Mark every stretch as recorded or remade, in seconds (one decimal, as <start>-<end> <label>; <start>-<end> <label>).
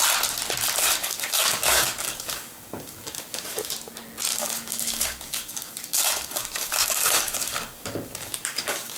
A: 0.0-1.0 recorded; 1.0-3.7 remade; 3.7-4.3 recorded; 4.3-9.0 remade